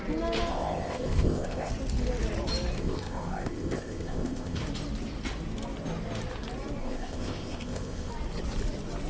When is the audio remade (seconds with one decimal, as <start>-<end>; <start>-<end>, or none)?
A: 0.5-1.7; 2.8-4.6; 6.8-8.1